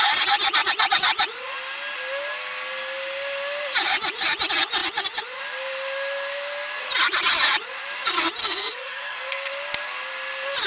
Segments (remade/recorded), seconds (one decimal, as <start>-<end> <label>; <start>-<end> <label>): 0.0-8.4 recorded; 8.4-9.5 remade; 9.5-10.7 recorded